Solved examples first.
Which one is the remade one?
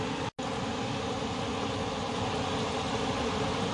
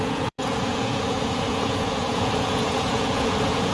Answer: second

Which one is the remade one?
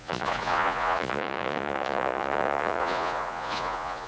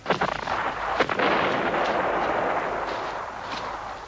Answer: first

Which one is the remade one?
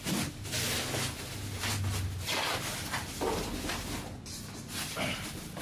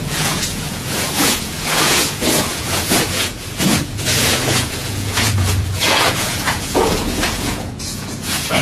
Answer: second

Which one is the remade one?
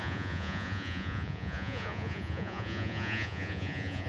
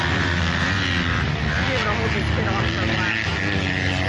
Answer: first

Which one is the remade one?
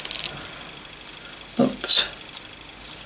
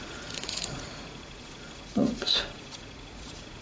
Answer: second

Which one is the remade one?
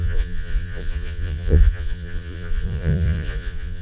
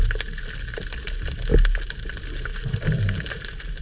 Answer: first